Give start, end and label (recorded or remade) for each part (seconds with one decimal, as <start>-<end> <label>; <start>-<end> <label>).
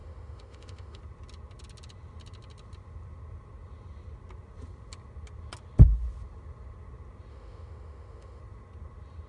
0.0-1.0 remade; 1.0-7.3 recorded; 7.3-8.4 remade; 8.4-9.3 recorded